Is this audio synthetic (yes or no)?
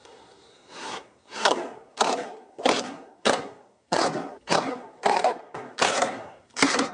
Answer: yes